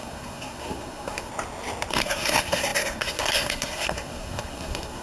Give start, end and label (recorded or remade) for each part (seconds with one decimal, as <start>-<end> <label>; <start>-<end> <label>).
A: 0.0-1.3 remade; 1.3-1.9 recorded; 1.9-5.0 remade